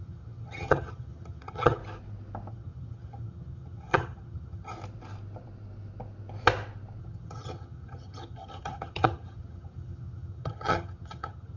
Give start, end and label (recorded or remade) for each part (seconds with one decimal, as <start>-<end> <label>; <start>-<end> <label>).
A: 0.0-1.8 remade; 1.8-2.5 recorded; 2.5-4.7 remade; 4.7-7.0 recorded; 7.0-11.6 remade